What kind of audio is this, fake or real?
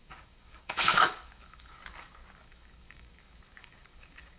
fake